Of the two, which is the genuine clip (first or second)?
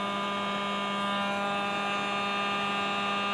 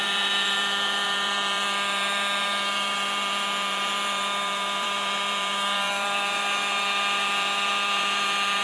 first